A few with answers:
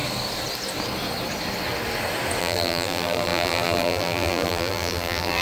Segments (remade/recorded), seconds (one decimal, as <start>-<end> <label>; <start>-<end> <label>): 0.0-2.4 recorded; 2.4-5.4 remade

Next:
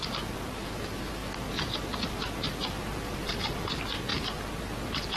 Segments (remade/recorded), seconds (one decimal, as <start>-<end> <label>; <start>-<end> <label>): 0.0-5.2 recorded

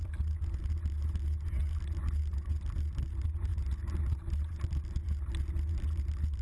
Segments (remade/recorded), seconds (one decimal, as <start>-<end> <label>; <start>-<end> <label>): 0.0-6.4 recorded

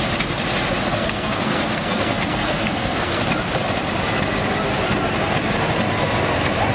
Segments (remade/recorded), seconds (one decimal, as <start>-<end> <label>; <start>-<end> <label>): 0.0-0.9 recorded; 0.9-3.2 remade; 3.2-6.7 recorded

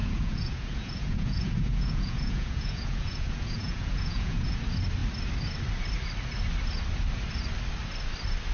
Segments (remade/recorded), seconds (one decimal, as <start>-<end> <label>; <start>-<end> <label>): 0.0-4.6 remade; 4.6-8.5 recorded

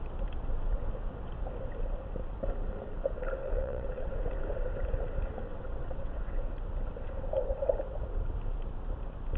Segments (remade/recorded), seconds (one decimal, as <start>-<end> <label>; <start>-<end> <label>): 0.0-3.4 recorded; 3.4-4.1 remade; 4.1-5.5 recorded; 5.5-6.3 remade; 6.3-9.4 recorded

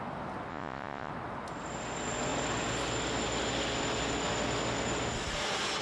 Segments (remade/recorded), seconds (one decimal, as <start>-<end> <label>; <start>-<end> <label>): 0.0-0.5 recorded; 0.5-1.1 remade; 1.1-5.8 recorded